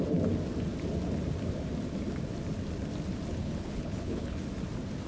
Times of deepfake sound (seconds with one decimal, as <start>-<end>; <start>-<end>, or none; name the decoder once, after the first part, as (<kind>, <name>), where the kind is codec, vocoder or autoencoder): 3.3-4.4 (codec, HILCodec)